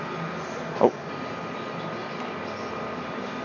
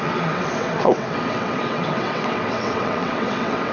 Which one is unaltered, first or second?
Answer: first